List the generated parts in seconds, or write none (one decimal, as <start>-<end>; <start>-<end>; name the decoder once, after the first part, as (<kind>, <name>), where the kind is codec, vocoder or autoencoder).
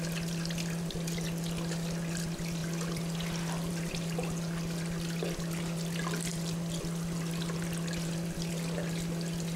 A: none